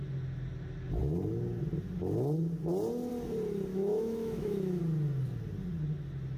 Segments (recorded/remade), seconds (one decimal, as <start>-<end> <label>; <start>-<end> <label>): 0.0-3.7 recorded; 3.7-4.8 remade; 4.8-6.4 recorded